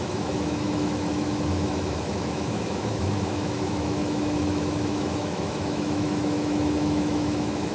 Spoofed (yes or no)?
yes